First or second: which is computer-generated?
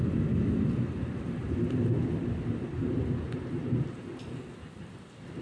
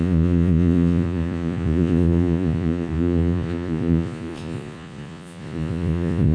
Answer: second